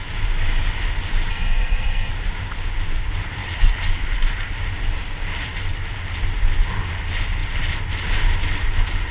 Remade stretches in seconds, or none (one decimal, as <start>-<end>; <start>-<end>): 1.3-2.1